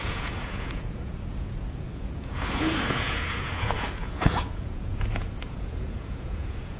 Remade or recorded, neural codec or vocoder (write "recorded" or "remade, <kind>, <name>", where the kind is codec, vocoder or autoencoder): remade, vocoder, Vocos